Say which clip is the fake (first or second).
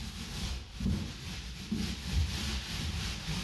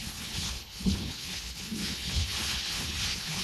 second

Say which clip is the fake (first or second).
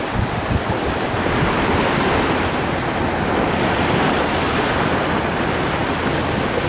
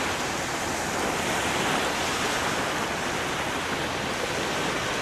second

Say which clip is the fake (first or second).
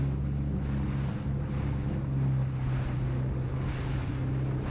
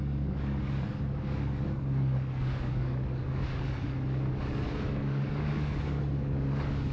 second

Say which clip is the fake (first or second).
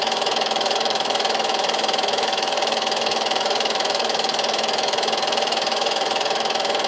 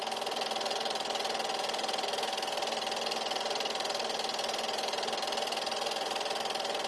first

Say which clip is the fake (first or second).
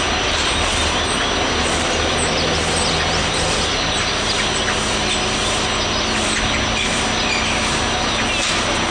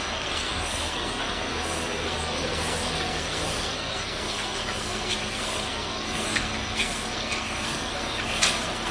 second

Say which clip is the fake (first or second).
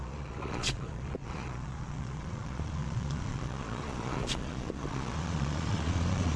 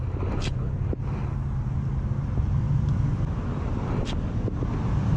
first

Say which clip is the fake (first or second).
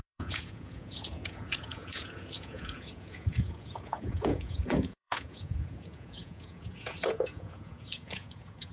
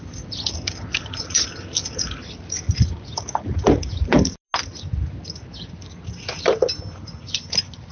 first